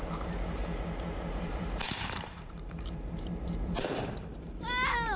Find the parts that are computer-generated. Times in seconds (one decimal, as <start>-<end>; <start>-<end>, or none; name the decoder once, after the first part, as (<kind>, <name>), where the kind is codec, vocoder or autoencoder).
0.0-0.6 (vocoder, BigVGAN v2); 1.3-5.2

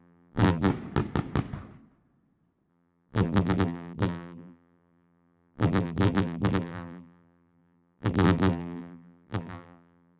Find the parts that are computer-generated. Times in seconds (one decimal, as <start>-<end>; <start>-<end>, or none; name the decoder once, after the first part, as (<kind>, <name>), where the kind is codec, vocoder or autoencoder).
0.0-0.7 (vocoder, BigVGAN v2); 2.7-10.2